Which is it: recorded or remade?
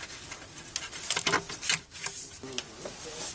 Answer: recorded